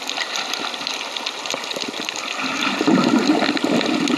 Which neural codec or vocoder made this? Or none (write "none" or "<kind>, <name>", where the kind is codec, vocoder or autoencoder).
none